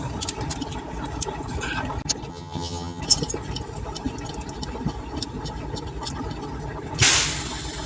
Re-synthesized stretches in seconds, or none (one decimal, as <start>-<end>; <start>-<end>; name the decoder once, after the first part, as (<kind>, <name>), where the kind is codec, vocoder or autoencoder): 2.3-3.0 (vocoder, HiFi-GAN)